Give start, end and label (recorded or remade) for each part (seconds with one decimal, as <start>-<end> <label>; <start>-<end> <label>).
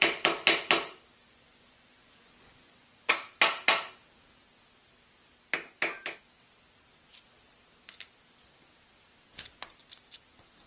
0.0-1.3 recorded; 1.3-3.1 remade; 3.1-10.7 recorded